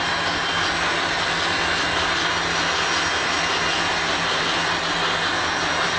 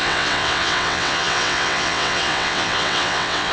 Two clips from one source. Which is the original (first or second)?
first